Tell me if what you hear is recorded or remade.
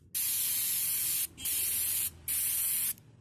recorded